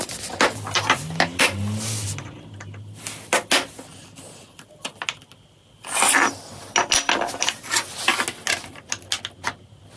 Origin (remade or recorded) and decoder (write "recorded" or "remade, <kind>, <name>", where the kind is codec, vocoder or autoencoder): recorded